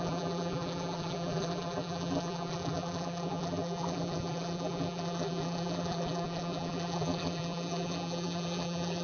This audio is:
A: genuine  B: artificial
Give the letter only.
B